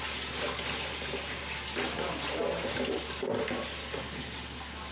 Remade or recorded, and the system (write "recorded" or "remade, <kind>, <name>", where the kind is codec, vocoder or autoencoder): recorded